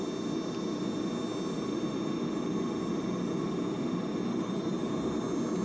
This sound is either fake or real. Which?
real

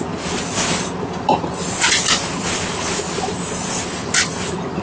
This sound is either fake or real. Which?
real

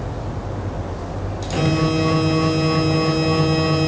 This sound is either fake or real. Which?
real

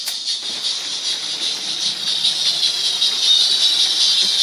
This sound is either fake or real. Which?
real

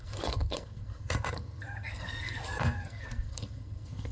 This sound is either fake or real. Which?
fake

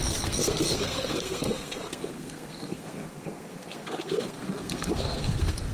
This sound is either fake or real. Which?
fake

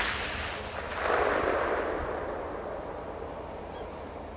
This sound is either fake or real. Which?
real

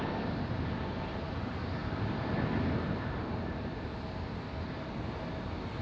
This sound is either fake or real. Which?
real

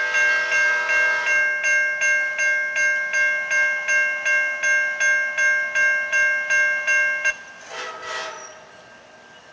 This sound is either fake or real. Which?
real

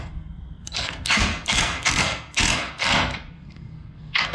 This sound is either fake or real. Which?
fake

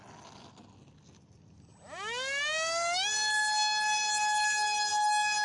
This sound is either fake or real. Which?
real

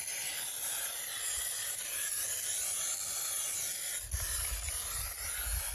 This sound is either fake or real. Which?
real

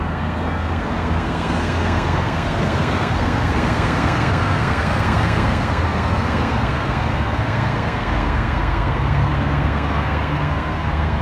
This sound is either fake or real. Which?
fake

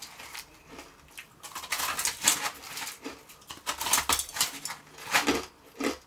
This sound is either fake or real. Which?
real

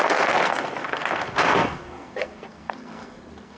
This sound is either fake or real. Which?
fake